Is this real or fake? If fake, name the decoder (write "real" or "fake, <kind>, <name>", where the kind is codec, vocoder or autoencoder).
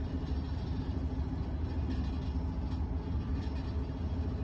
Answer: real